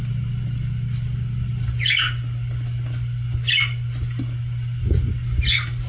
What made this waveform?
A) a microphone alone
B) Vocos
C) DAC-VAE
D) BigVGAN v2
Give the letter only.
A